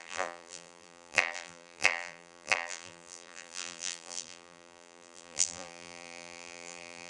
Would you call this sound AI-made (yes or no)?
yes